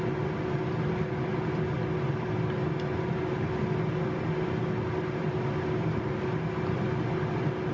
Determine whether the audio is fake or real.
real